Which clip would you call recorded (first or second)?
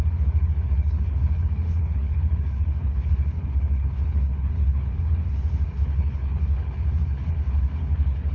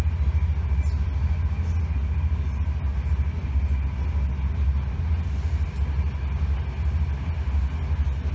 second